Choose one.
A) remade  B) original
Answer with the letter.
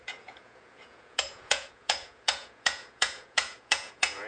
A